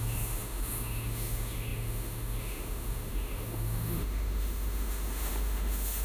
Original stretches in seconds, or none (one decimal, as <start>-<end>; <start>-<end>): none